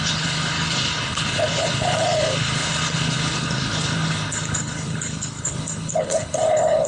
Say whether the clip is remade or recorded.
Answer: remade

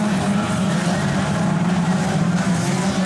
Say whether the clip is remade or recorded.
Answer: remade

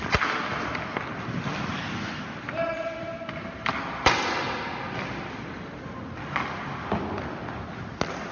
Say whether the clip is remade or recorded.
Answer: recorded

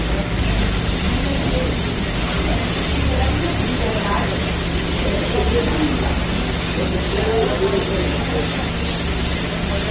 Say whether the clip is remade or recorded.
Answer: recorded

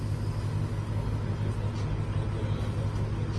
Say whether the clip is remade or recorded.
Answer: recorded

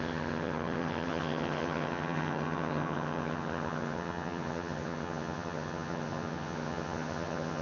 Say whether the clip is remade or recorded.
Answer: remade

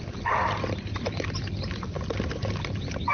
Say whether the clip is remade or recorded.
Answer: recorded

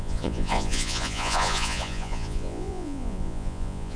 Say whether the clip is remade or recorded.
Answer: remade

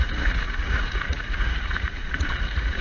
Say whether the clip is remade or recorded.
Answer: remade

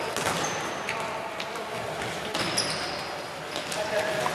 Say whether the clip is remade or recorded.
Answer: recorded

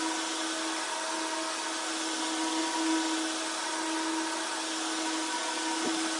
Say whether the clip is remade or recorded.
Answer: recorded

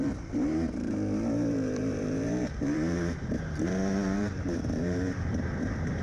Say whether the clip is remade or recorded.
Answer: remade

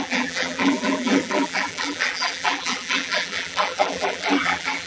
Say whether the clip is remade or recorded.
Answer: remade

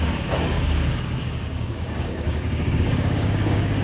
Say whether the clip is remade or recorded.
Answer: remade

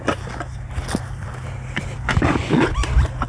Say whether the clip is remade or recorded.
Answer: remade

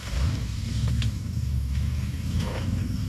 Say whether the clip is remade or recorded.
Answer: remade